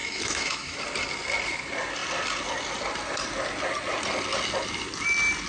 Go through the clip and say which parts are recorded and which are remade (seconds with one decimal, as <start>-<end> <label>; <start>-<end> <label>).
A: 0.0-0.8 remade; 0.8-5.5 recorded